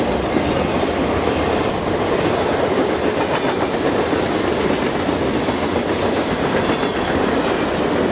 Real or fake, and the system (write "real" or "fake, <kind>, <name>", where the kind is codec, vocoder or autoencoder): real